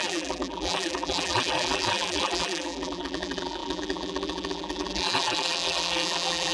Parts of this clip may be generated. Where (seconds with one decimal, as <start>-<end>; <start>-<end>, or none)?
0.0-6.5